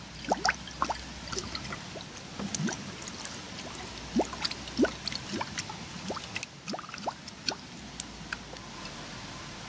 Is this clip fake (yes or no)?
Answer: no